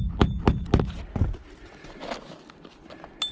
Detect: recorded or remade recorded